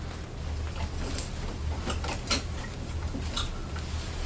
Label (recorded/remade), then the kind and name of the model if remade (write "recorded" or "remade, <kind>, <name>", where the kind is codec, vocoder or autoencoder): recorded